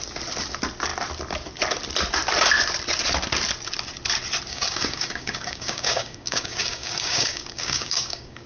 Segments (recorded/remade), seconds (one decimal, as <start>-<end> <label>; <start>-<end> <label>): 0.0-4.5 recorded; 4.5-8.5 remade